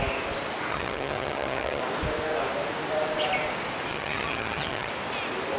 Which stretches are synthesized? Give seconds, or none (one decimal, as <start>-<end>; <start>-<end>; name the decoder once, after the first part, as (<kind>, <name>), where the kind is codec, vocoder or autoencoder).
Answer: 0.7-1.8 (vocoder, HiFi-GAN); 3.9-4.9